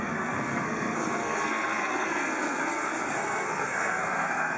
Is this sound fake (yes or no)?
yes